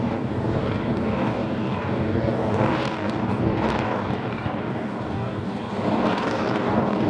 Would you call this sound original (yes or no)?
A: no